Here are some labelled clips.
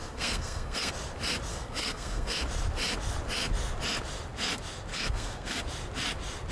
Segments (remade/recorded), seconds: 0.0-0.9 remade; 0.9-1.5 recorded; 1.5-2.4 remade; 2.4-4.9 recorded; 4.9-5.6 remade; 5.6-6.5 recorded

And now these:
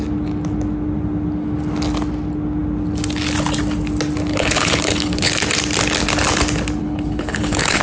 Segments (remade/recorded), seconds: 0.0-4.3 recorded; 4.3-5.3 remade; 5.3-6.8 recorded; 6.8-7.8 remade

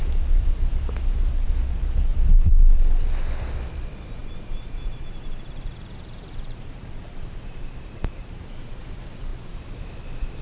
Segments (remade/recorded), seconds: 0.0-2.1 recorded; 2.1-2.8 remade; 2.8-4.2 recorded; 4.2-8.8 remade; 8.8-10.4 recorded

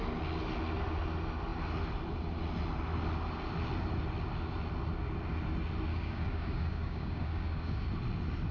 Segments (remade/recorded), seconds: 0.0-5.9 recorded; 5.9-7.9 remade; 7.9-8.5 recorded

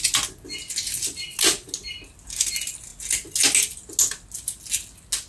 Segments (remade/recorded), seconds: 0.0-5.3 recorded

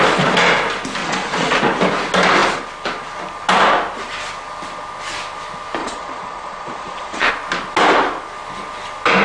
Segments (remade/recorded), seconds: 0.0-1.0 recorded; 1.0-1.6 remade; 1.6-5.8 recorded; 5.8-7.3 remade; 7.3-9.2 recorded